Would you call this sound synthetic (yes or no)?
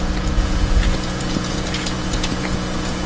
yes